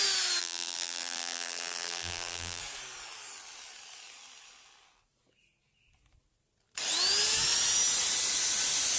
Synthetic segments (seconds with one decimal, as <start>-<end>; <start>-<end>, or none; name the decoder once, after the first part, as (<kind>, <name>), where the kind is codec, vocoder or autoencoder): 0.4-2.6 (vocoder, BigVGAN v2)